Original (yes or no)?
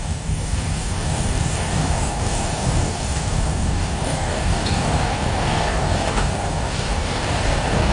no